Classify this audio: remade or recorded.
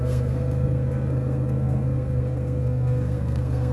remade